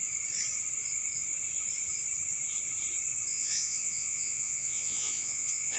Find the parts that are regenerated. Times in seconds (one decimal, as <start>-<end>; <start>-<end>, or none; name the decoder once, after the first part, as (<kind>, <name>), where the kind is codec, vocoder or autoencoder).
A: 3.3-5.8 (vocoder, Vocos)

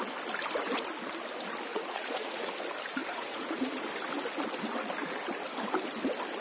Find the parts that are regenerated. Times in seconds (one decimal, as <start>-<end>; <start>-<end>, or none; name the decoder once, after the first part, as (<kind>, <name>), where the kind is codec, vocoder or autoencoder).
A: 1.7-2.5 (vocoder, Vocos); 3.0-3.8

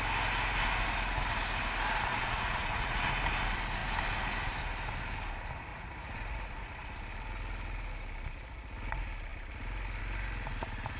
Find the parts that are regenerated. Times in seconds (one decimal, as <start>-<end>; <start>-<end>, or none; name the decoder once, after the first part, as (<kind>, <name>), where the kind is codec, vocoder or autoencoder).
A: 2.1-3.1 (vocoder, Vocos); 5.7-6.7

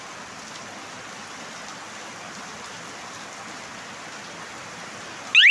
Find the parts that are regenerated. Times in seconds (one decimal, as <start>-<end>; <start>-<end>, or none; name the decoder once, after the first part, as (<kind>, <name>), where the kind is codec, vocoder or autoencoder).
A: none

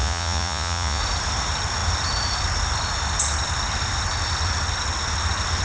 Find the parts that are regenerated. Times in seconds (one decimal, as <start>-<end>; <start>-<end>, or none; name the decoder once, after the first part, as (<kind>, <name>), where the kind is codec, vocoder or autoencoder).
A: 0.0-1.0 (vocoder, Vocos)